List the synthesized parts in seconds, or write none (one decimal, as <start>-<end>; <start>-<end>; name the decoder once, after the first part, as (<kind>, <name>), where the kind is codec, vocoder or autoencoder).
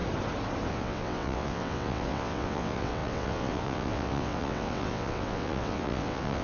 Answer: 0.7-6.4 (vocoder, WaveNeXt)